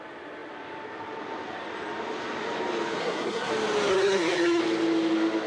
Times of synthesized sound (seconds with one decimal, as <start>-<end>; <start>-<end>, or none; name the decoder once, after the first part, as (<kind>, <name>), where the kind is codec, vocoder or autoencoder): 3.0-3.5 (codec, SNAC); 3.9-4.6